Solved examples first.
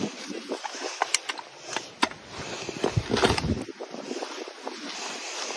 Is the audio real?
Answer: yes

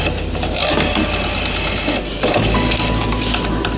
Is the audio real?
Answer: yes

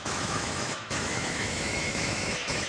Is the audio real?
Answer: no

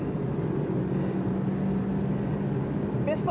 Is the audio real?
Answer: yes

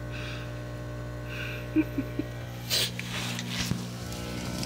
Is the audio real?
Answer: yes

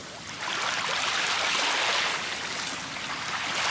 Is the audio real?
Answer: yes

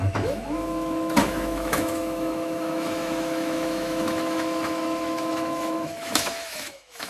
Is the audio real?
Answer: no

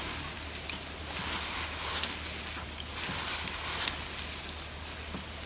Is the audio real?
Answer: yes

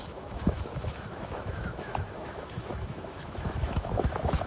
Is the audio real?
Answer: no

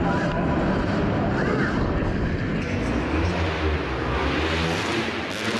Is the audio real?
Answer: yes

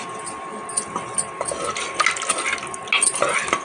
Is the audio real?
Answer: yes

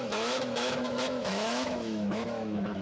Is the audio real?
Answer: no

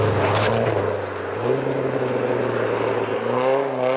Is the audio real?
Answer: yes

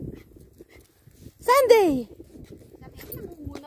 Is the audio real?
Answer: yes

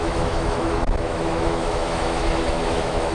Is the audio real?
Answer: no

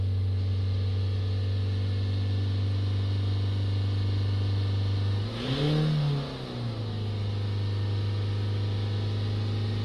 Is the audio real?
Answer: yes